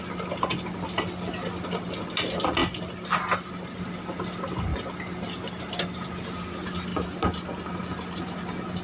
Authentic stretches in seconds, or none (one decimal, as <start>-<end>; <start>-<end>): 0.0-8.8